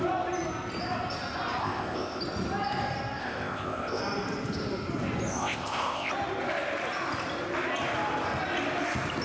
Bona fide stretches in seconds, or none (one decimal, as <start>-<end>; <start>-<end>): 0.0-1.6; 2.2-3.2; 4.0-5.3; 6.1-9.2